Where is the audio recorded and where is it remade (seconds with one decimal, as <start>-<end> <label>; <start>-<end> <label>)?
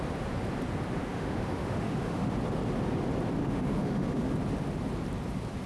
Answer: 0.0-1.0 recorded; 1.0-2.3 remade; 2.3-3.4 recorded; 3.4-4.3 remade; 4.3-5.7 recorded